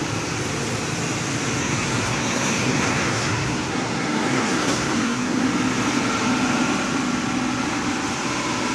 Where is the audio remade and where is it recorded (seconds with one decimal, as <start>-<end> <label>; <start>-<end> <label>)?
0.0-1.6 recorded; 1.6-5.5 remade; 5.5-8.7 recorded

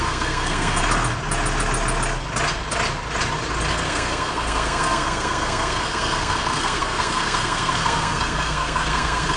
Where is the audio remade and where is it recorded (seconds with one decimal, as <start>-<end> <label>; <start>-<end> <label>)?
0.0-0.8 remade; 0.8-3.7 recorded; 3.7-9.4 remade

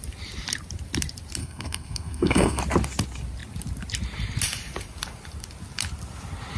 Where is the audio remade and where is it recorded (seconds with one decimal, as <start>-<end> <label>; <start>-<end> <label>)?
0.0-1.4 recorded; 1.4-2.6 remade; 2.6-6.6 recorded

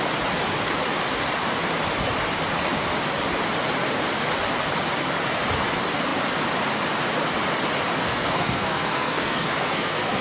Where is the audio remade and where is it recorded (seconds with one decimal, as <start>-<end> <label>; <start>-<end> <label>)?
0.0-8.0 recorded; 8.0-10.2 remade

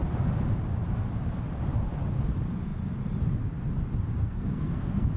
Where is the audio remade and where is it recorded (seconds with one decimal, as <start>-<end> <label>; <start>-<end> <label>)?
0.0-4.2 recorded; 4.2-5.2 remade